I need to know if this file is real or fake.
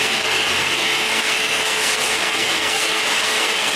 fake